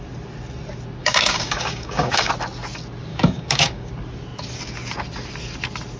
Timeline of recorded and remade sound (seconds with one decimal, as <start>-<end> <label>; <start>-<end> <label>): 0.0-1.0 recorded; 1.0-2.3 remade; 2.3-3.1 recorded; 3.1-3.9 remade; 3.9-6.0 recorded

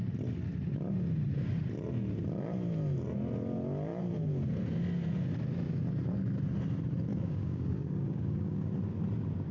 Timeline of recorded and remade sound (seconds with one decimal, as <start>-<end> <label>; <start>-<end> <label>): 0.0-7.1 recorded; 7.1-8.8 remade; 8.8-9.5 recorded

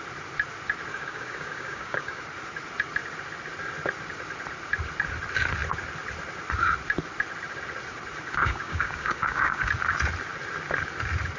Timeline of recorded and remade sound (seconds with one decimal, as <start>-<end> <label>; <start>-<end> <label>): 0.0-0.9 recorded; 0.9-2.2 remade; 2.2-8.4 recorded; 8.4-9.7 remade; 9.7-11.4 recorded

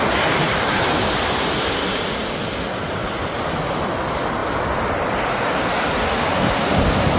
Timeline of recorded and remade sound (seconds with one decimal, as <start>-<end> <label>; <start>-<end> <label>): 0.0-7.2 recorded